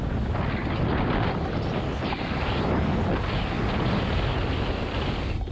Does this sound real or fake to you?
real